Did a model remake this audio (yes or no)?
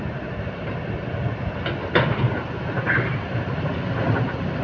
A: no